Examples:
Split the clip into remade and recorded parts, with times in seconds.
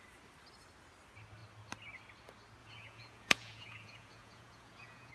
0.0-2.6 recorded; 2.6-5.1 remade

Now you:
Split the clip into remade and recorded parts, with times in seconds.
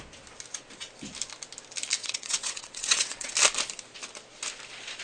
0.0-2.0 recorded; 2.0-3.3 remade; 3.3-5.0 recorded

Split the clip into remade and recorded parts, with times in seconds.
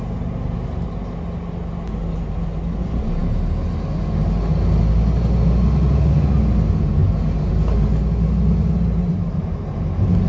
0.0-10.3 recorded